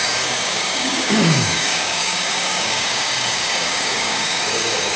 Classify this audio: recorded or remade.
remade